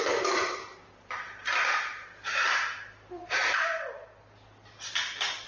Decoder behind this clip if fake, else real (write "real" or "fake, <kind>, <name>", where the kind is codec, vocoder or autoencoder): real